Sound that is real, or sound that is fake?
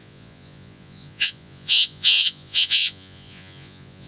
fake